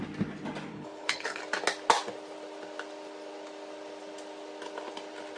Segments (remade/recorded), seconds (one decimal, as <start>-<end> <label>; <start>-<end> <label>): 0.0-0.7 recorded; 0.7-1.4 remade; 1.4-5.4 recorded